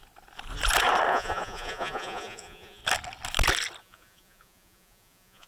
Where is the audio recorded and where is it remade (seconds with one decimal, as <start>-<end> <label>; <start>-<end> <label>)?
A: 0.0-1.1 recorded; 1.1-2.8 remade; 2.8-3.8 recorded; 3.8-5.5 remade